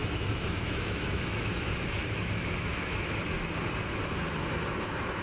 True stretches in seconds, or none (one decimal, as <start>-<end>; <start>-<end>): 3.1-5.2